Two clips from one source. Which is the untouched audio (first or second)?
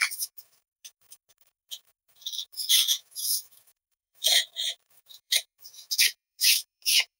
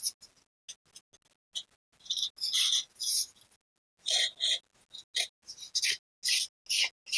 second